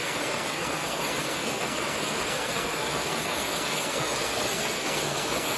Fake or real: fake